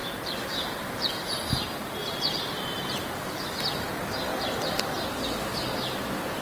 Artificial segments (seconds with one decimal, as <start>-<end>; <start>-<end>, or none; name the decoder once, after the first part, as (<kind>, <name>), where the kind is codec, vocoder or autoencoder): 0.0-3.3 (vocoder, BigVGAN v2)